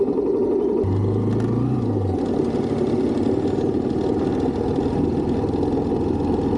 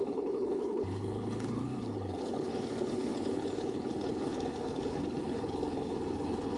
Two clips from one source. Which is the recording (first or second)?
first